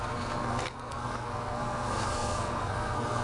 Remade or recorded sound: remade